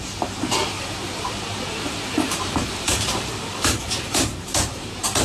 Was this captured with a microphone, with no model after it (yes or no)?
no